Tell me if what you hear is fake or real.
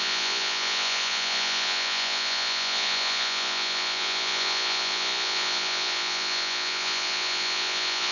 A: fake